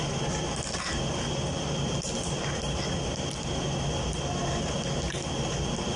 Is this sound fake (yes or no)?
no